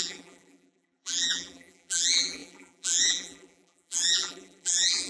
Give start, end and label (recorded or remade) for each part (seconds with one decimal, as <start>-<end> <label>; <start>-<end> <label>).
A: 0.0-5.1 remade